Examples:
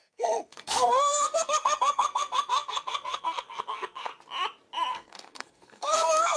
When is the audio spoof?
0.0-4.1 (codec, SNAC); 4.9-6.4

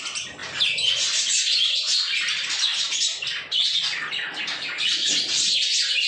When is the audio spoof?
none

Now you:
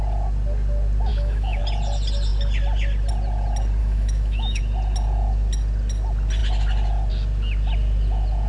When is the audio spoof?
1.1-1.6 (autoencoder, DAC-VAE); 3.8-4.6

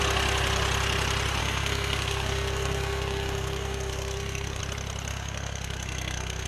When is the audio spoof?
1.4-4.6 (codec, SNAC); 5.1-6.5